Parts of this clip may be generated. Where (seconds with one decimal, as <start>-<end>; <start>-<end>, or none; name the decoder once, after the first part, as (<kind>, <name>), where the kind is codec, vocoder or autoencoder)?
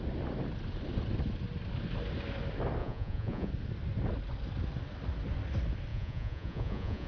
2.8-3.5 (vocoder, Vocos); 5.9-7.1